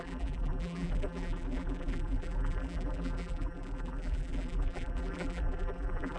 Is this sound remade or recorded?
remade